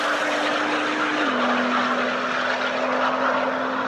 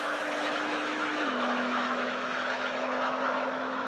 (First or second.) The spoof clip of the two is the second